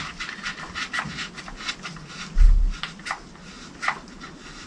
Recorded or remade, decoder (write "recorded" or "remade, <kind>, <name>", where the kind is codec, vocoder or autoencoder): recorded